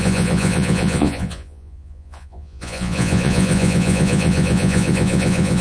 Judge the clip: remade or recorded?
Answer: remade